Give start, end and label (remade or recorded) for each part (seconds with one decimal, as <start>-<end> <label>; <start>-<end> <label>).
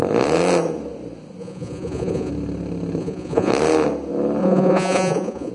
0.0-1.4 recorded; 1.4-2.3 remade; 2.3-3.0 recorded; 3.0-3.5 remade; 3.5-4.4 recorded; 4.4-5.5 remade